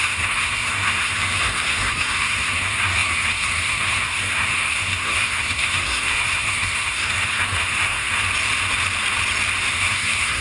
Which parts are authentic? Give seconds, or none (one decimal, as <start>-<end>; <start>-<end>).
8.2-9.7